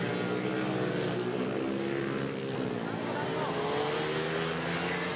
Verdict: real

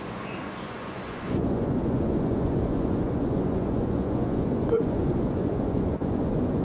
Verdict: fake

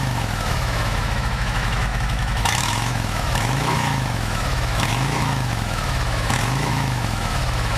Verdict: fake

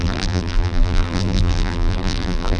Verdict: fake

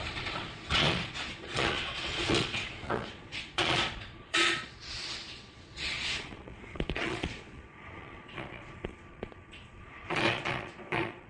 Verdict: fake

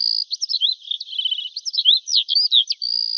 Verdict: real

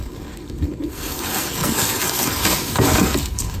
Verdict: fake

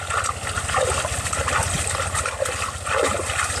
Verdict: real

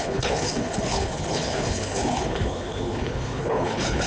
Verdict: fake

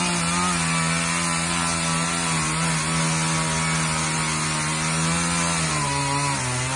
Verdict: real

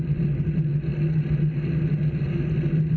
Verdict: real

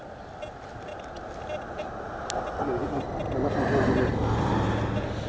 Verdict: real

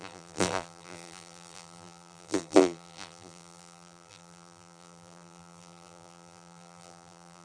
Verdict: fake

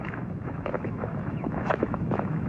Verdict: fake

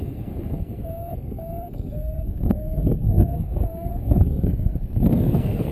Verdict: fake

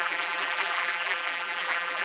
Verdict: fake